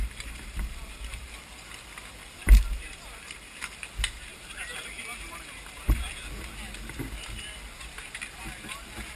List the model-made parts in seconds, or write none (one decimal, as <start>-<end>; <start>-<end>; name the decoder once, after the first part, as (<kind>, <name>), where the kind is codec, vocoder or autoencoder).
0.0-1.3 (vocoder, BigVGAN v2); 2.2-3.6; 4.3-6.1